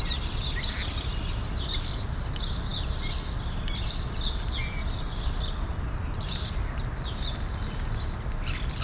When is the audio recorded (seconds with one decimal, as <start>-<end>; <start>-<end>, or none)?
0.0-8.8